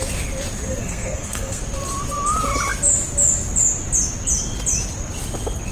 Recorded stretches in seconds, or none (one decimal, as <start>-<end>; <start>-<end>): 0.0-0.8; 1.6-5.7